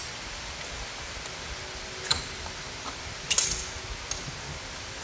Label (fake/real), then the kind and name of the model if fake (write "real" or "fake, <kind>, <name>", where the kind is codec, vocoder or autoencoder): real